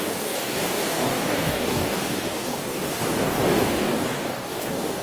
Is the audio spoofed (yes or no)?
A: yes